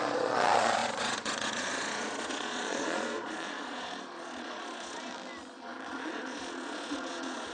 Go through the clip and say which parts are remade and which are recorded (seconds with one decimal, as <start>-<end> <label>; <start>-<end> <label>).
0.0-5.1 remade; 5.1-5.9 recorded; 5.9-7.5 remade